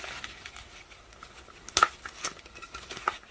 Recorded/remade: recorded